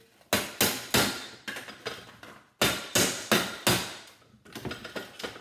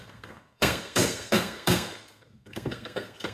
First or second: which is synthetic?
second